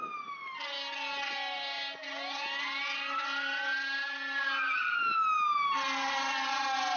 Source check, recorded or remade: recorded